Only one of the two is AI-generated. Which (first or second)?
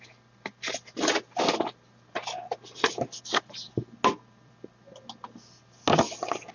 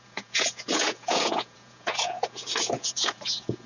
second